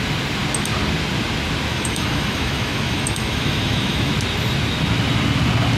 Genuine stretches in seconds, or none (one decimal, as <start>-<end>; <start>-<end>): 0.0-1.7; 4.1-5.8